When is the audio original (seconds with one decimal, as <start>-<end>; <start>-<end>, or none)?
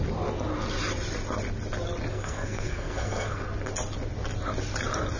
0.0-2.1; 3.4-5.2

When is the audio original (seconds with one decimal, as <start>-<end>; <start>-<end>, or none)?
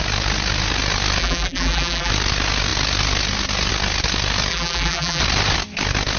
0.0-1.2; 2.1-4.5; 5.2-6.2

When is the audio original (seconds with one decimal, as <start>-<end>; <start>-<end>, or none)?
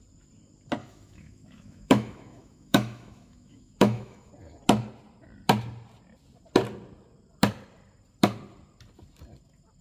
0.0-0.8; 4.3-9.8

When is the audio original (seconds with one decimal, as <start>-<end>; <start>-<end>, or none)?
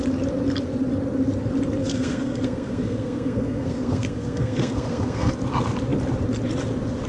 0.0-1.8; 5.3-7.1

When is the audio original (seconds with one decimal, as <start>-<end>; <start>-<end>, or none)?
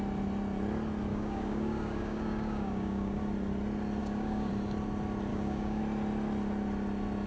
0.0-1.1; 3.2-4.0; 4.5-5.3; 5.8-7.3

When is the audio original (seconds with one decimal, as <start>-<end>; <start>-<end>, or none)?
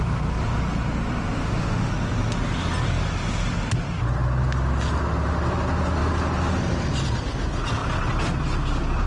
0.0-1.4; 1.9-9.1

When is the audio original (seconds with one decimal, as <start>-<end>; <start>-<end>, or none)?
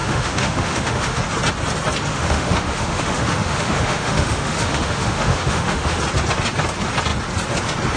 1.2-2.1; 6.0-8.0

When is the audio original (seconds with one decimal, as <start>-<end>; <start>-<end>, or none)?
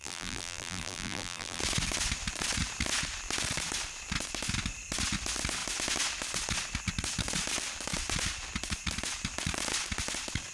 1.6-10.5